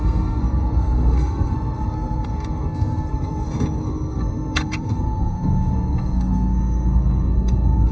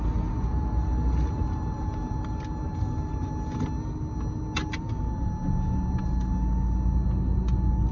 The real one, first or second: second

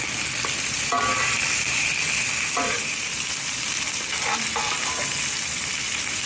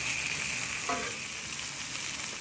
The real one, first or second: second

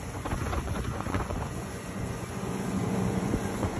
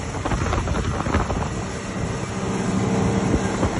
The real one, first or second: second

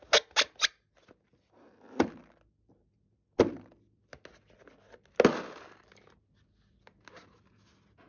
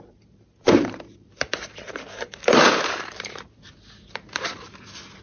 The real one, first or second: first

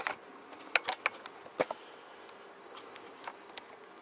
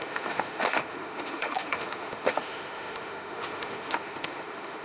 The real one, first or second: first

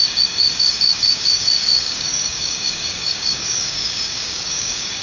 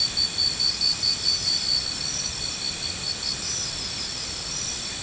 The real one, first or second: second